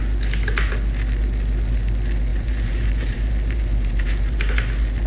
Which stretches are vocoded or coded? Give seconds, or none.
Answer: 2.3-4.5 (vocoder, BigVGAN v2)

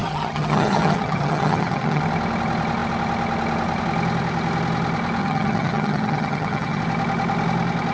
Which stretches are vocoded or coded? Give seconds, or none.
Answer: 0.0-2.0 (vocoder, HiFi-GAN); 5.2-6.8

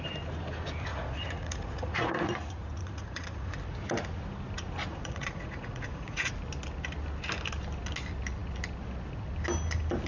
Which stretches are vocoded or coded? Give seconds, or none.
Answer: 0.9-3.6 (vocoder, Vocos); 4.8-6.3

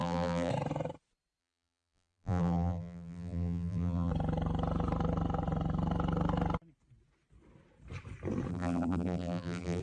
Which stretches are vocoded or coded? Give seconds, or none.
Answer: 0.0-0.5 (vocoder, BigVGAN v2); 1.4-4.1; 8.5-9.8

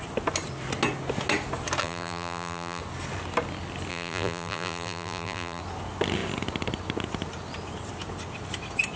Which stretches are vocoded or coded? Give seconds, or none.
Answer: 1.8-2.8 (vocoder, BigVGAN v2); 3.9-5.6

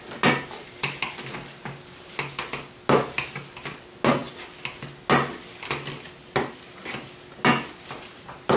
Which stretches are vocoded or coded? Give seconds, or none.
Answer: none

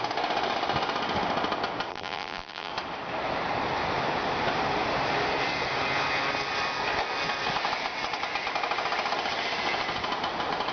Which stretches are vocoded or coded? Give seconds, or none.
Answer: 1.9-2.7 (vocoder, BigVGAN v2)